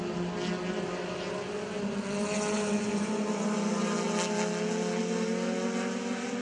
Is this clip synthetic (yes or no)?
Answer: no